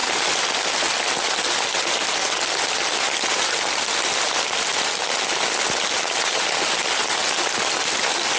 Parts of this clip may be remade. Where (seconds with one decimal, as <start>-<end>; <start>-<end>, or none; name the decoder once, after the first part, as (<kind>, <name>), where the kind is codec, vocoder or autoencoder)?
none